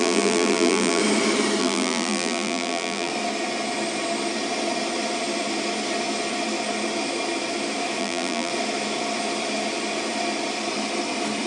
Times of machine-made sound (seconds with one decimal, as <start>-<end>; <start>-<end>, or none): 0.0-1.0; 1.6-3.1; 8.0-8.5